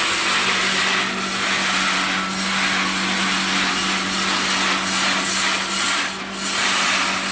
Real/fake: real